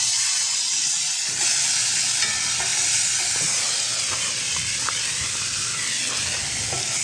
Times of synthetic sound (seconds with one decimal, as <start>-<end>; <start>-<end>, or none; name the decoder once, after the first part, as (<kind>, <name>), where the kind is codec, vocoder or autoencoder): none